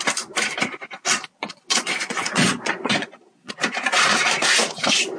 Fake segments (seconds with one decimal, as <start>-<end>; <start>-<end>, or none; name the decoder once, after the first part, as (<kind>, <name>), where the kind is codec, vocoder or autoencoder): 1.3-3.5 (vocoder, Vocos)